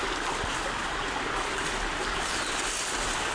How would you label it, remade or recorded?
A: recorded